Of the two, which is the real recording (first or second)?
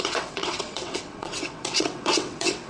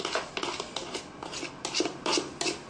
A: second